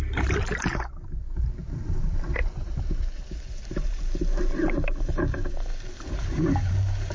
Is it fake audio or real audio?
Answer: fake